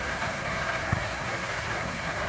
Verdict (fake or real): fake